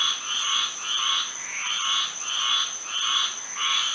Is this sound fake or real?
real